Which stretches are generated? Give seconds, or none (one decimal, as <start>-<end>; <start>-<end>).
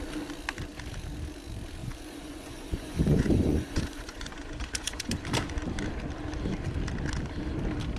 1.8-5.2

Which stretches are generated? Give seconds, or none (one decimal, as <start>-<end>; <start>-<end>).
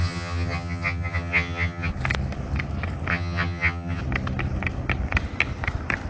0.0-1.9; 3.1-4.0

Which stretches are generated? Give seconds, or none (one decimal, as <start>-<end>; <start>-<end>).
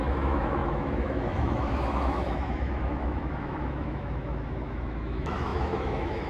0.0-6.3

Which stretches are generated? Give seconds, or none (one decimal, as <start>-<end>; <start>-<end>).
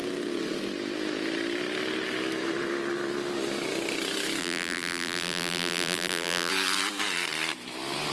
4.4-6.5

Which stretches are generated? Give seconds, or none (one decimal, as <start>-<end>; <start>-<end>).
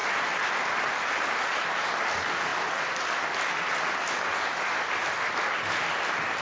none